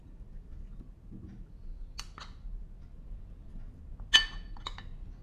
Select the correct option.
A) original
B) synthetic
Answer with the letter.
A